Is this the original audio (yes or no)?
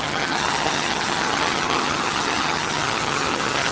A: no